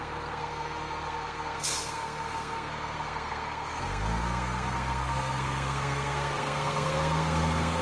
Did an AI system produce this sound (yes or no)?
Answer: yes